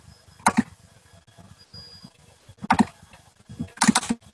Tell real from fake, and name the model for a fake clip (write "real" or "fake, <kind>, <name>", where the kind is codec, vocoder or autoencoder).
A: real